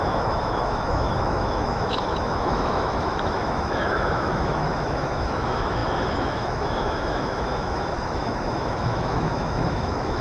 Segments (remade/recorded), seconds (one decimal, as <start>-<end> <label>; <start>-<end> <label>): 0.0-10.2 remade